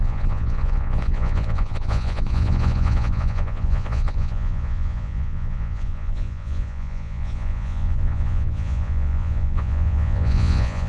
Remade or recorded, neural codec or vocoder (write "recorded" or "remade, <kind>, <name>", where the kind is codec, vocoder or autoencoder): remade, vocoder, Vocos